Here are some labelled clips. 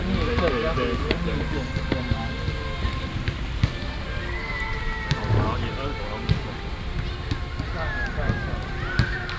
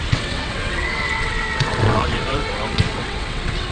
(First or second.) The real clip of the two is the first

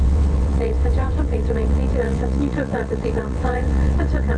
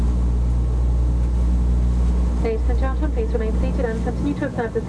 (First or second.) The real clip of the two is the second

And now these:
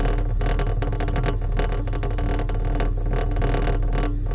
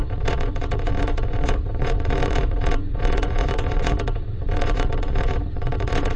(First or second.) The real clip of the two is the first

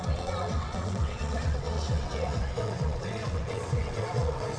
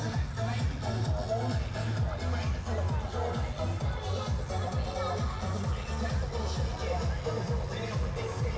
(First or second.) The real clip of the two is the second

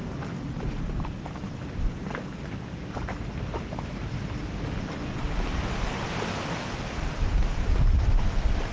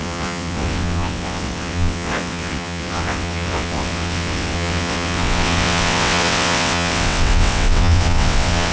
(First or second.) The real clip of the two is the first